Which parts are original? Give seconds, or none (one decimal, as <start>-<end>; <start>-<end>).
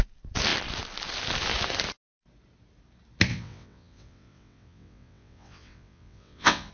0.0-3.3